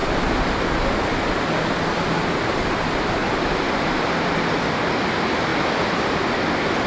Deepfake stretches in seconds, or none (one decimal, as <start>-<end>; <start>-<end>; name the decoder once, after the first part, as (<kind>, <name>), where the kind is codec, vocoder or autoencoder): 3.2-4.8 (vocoder, BigVGAN v2); 5.5-6.3